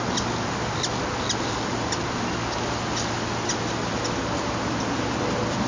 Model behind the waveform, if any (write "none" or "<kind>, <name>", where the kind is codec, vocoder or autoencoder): none